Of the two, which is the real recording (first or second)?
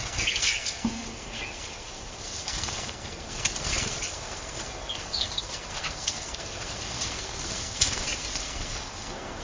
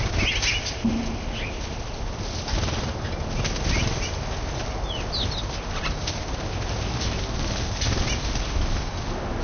second